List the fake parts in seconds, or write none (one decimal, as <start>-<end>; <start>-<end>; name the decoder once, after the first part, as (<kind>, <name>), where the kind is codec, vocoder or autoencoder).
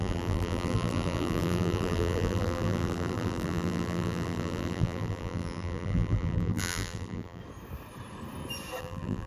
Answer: 0.0-7.4 (vocoder, BigVGAN v2); 8.8-9.3